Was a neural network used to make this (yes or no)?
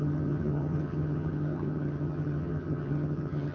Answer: yes